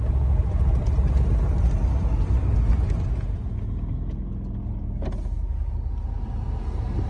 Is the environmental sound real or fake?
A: real